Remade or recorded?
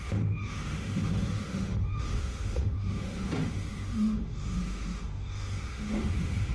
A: remade